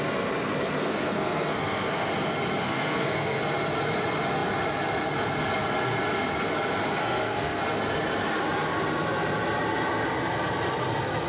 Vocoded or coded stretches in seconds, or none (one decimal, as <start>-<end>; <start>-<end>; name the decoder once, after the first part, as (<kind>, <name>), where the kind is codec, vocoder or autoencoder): 0.8-2.1 (codec, SNAC); 2.6-3.4; 7.0-7.6